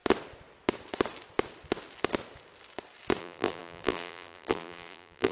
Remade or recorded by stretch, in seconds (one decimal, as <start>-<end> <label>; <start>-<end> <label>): 0.0-3.2 recorded; 3.2-5.3 remade